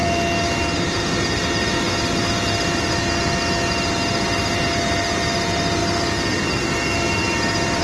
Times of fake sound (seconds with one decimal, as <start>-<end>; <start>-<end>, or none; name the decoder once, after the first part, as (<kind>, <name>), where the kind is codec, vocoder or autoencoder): none